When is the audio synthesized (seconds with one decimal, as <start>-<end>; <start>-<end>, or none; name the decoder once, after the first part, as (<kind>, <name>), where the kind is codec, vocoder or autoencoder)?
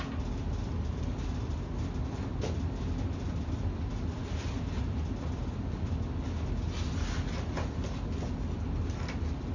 none